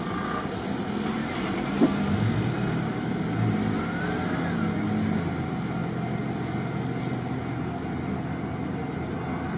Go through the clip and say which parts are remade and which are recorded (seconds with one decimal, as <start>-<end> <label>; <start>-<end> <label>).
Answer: 0.0-9.6 recorded